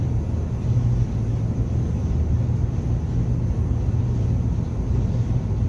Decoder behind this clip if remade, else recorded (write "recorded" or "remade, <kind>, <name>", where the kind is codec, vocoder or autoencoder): recorded